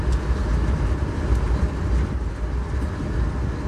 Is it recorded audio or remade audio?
recorded